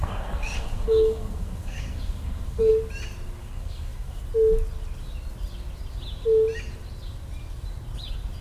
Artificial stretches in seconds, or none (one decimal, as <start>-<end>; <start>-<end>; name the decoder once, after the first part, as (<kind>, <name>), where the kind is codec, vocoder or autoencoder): 0.0-2.7 (codec, SNAC); 3.4-4.2